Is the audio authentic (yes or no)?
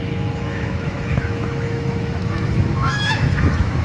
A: no